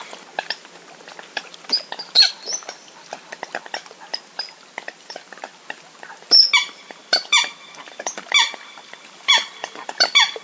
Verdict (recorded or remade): recorded